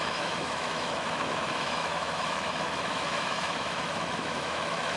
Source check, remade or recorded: remade